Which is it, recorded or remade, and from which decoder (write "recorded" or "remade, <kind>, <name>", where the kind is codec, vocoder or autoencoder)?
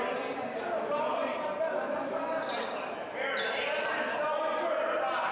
recorded